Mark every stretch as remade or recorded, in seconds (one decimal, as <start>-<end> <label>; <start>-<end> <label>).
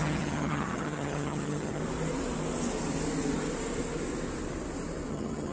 0.0-1.8 remade; 1.8-5.1 recorded; 5.1-5.5 remade